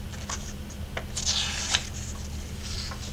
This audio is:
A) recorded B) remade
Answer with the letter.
A